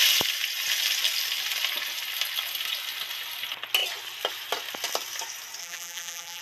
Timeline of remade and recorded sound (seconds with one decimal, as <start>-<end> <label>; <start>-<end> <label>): 0.0-5.6 recorded; 5.6-6.4 remade